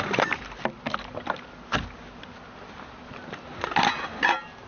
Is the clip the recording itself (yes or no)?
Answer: yes